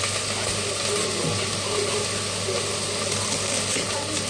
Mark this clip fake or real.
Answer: real